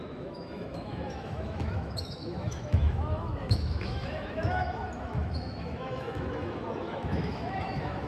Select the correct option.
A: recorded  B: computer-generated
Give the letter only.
B